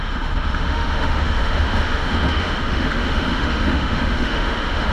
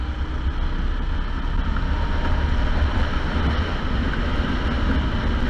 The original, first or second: second